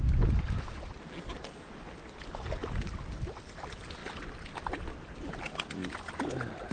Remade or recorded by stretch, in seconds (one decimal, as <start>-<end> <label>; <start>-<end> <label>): 0.0-6.7 recorded